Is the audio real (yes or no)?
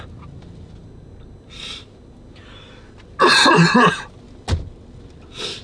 yes